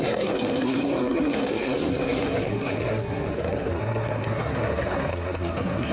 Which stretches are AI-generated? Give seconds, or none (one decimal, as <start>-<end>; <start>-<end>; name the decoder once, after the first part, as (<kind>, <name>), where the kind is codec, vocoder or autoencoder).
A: 0.0-5.9 (codec, SNAC)